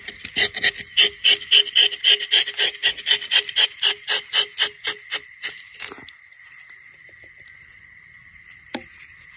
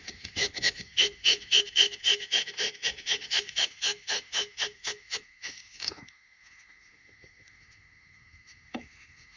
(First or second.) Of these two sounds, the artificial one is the second